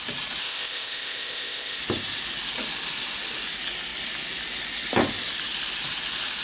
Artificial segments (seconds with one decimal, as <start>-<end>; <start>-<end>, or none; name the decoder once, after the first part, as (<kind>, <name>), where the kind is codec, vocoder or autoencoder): 0.4-1.8 (codec, ZipCodec)